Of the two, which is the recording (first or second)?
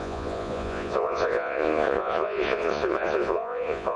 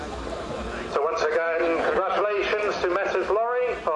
second